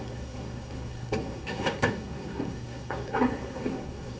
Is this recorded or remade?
remade